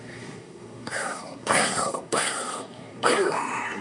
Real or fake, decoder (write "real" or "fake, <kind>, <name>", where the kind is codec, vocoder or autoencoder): fake, codec, SNAC